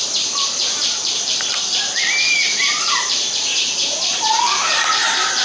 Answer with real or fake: fake